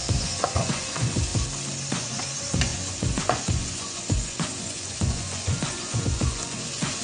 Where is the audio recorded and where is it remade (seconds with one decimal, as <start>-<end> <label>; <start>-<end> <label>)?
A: 0.0-1.3 remade; 1.3-1.9 recorded; 1.9-7.0 remade

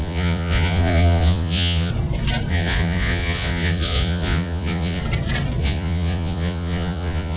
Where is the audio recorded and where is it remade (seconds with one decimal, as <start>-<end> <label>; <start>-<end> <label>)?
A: 0.0-1.9 remade; 1.9-2.5 recorded; 2.5-5.0 remade; 5.0-5.6 recorded; 5.6-7.4 remade

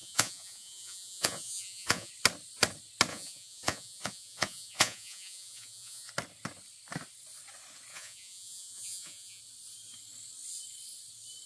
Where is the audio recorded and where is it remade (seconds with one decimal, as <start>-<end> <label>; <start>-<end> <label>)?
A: 0.0-2.1 remade; 2.1-3.1 recorded; 3.1-6.1 remade; 6.1-7.9 recorded; 7.9-9.4 remade; 9.4-11.5 recorded

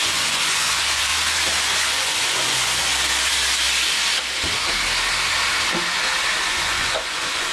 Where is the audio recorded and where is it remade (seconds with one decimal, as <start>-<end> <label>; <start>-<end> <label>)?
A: 0.0-1.1 remade; 1.1-1.6 recorded; 1.6-2.8 remade; 2.8-6.4 recorded; 6.4-7.5 remade

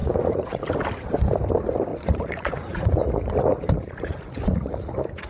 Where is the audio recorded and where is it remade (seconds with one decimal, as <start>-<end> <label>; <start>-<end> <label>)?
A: 0.0-0.6 remade; 0.6-1.9 recorded; 1.9-5.3 remade

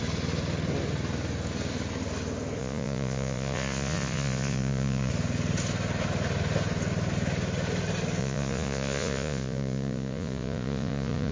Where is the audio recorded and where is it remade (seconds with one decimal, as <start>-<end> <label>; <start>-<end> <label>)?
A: 0.0-2.6 recorded; 2.6-5.1 remade; 5.1-8.2 recorded; 8.2-11.3 remade

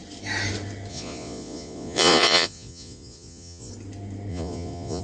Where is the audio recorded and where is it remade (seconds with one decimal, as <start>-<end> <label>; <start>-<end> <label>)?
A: 0.0-0.9 recorded; 0.9-3.7 remade; 3.7-4.3 recorded; 4.3-5.0 remade